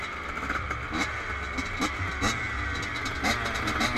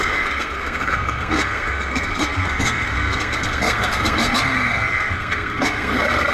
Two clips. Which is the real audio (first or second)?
first